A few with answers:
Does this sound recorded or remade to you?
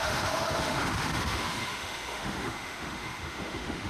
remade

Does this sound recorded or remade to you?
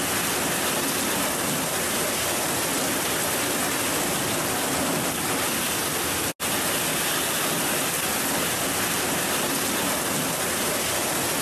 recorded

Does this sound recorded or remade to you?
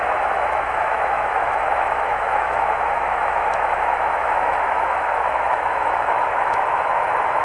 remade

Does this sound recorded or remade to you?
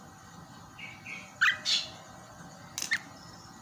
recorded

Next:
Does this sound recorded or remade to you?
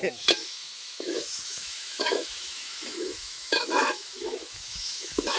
remade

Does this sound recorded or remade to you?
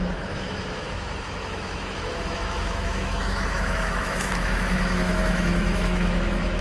remade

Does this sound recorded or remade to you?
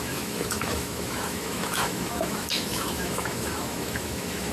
remade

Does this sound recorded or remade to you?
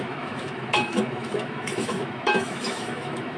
remade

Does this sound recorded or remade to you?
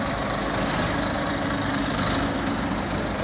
recorded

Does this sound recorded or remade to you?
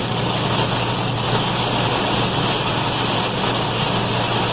recorded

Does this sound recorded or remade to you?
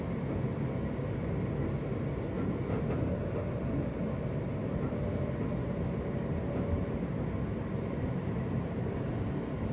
recorded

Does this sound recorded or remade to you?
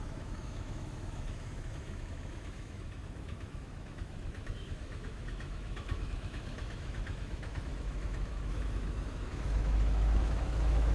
remade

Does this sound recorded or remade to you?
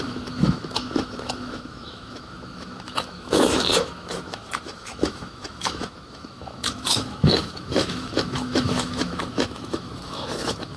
remade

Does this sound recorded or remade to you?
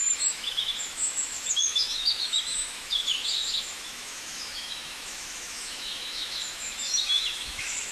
remade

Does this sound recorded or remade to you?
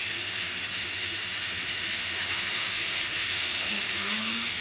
remade